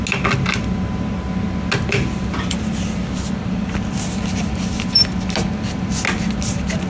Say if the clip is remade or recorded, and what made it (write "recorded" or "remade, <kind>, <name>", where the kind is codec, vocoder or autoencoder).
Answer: recorded